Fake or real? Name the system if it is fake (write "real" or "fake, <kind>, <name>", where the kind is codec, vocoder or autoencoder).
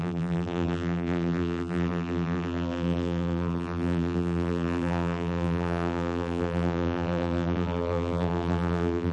fake, vocoder, BigVGAN v2